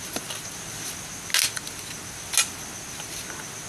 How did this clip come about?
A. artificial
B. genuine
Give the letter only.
B